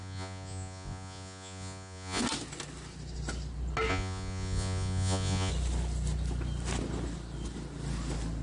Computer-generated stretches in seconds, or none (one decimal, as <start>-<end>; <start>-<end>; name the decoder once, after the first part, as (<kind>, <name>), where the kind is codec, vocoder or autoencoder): 0.0-2.2 (vocoder, Vocos); 3.9-5.5